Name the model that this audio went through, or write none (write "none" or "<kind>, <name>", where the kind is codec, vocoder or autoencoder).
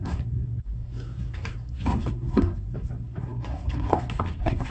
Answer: codec, SNAC